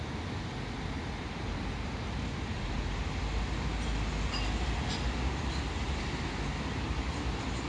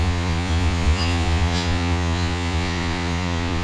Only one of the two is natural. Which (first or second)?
first